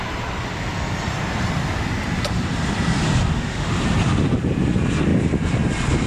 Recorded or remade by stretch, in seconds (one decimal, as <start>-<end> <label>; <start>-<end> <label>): 0.0-3.3 recorded; 3.3-3.8 remade; 3.8-6.1 recorded